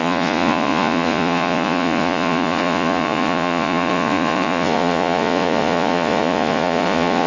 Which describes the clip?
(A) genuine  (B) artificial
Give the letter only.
B